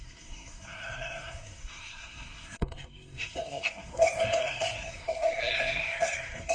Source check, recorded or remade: remade